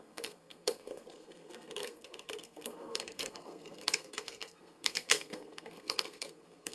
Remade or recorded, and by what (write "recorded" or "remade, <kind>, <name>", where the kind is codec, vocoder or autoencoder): remade, codec, SNAC